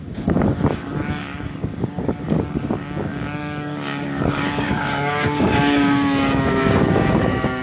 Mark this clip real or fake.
fake